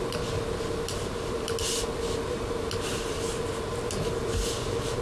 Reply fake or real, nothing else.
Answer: real